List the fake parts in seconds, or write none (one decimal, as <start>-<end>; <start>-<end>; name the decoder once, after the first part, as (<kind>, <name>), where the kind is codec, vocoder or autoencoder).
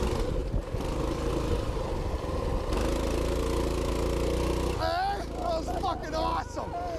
0.4-1.3 (vocoder, BigVGAN v2)